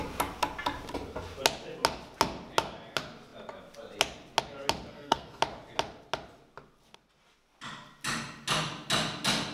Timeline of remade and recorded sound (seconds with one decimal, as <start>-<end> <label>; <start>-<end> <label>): 0.0-4.9 recorded; 4.9-5.4 remade; 5.4-9.5 recorded